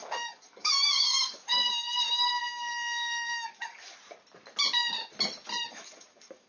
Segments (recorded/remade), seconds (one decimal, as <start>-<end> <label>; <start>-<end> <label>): 0.0-3.8 remade; 3.8-5.7 recorded; 5.7-6.5 remade